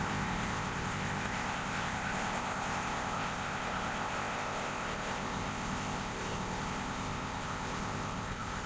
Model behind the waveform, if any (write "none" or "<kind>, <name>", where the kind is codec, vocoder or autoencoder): codec, ZipCodec